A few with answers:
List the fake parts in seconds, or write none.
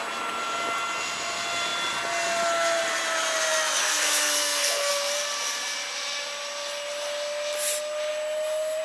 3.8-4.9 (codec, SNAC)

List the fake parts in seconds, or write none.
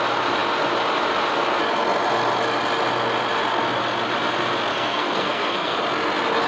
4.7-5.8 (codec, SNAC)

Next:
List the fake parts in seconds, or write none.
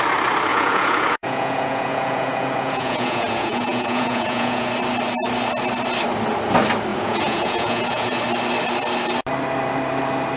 0.5-4.7 (vocoder, Vocos); 6.9-8.2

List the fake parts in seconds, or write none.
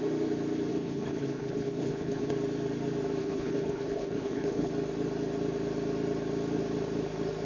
0.7-2.3 (codec, HILCodec); 3.2-4.7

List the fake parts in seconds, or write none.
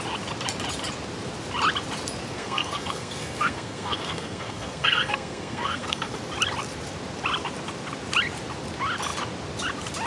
2.3-6.1 (codec, SNAC)